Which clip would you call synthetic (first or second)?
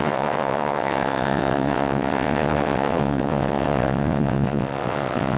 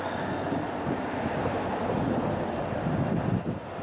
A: first